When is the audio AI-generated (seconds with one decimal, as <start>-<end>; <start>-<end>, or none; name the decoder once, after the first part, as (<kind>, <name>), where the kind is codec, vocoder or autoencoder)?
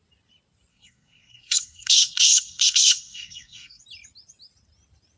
0.7-3.8 (codec, SNAC)